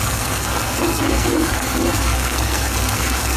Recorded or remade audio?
remade